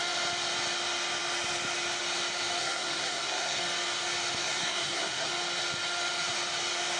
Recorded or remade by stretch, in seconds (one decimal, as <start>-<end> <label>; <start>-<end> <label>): 0.0-2.6 recorded; 2.6-3.6 remade; 3.6-4.4 recorded; 4.4-5.3 remade; 5.3-7.0 recorded